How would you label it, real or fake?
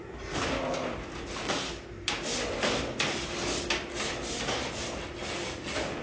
real